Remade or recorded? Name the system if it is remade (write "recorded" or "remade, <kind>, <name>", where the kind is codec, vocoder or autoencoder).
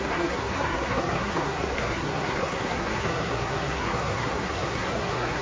remade, codec, SNAC